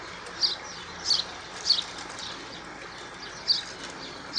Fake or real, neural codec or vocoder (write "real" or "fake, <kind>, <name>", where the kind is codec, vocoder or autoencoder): real